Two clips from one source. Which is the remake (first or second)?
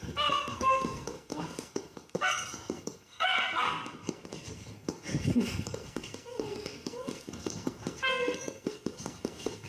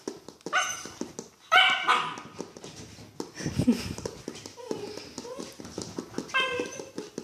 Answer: first